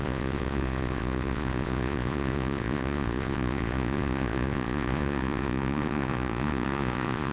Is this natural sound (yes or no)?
no